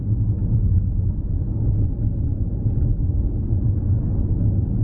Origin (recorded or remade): recorded